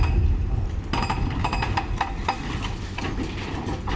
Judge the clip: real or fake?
real